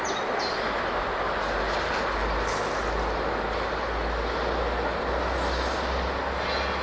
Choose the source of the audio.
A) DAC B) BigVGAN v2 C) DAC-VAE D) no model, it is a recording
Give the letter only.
D